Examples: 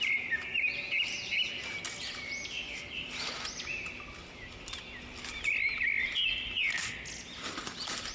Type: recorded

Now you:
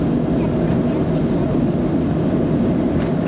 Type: recorded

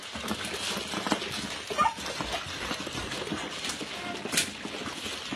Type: recorded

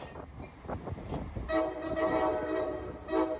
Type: recorded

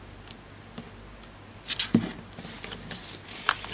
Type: recorded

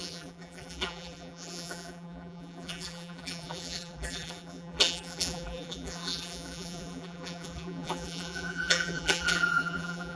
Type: remade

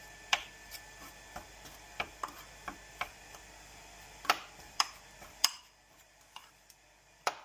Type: remade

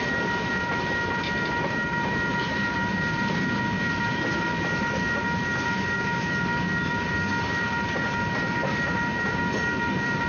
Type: remade